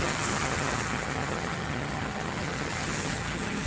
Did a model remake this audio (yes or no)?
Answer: yes